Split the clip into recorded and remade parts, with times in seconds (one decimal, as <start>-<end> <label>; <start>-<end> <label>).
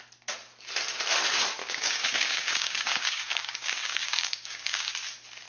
0.0-1.6 recorded; 1.6-4.9 remade; 4.9-5.5 recorded